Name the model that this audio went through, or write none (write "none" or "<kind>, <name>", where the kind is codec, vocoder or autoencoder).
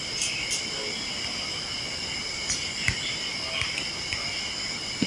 none